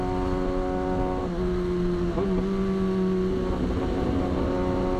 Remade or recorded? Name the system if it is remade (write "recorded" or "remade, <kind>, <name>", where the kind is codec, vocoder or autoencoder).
recorded